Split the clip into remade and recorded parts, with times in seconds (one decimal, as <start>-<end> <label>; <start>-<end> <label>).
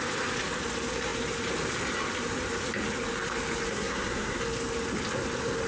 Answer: 0.0-3.7 recorded; 3.7-4.4 remade; 4.4-5.7 recorded